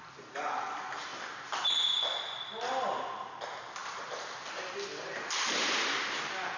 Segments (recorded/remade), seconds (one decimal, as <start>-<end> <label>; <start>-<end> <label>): 0.0-6.6 recorded